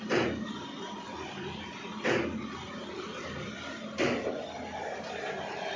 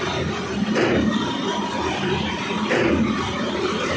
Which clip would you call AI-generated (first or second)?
second